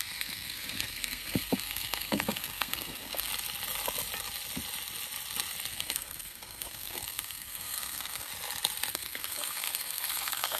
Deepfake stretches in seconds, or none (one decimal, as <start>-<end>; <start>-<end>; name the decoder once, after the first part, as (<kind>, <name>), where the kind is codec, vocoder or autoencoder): 0.0-3.3 (codec, SNAC); 5.7-8.3; 8.9-10.6